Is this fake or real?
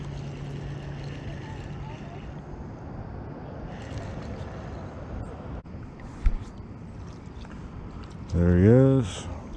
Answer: real